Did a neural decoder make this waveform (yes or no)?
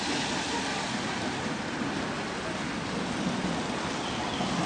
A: yes